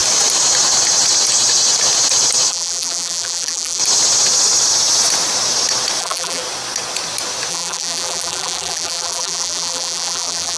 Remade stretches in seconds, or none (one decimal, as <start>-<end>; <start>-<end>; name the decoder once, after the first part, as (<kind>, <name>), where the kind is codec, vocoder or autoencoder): 2.5-3.8 (vocoder, BigVGAN v2); 6.0-6.4; 7.5-10.6